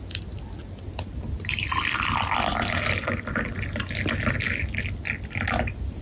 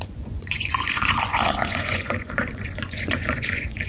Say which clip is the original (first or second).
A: first